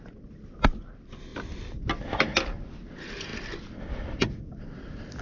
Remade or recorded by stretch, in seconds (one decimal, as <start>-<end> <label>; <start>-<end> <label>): 0.0-5.2 recorded